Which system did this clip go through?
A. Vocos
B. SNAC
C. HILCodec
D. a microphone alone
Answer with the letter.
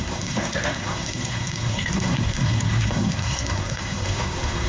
B